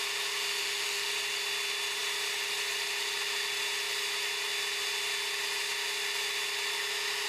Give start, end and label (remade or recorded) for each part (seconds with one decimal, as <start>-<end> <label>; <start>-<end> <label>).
0.0-0.6 recorded; 0.6-1.1 remade; 1.1-7.3 recorded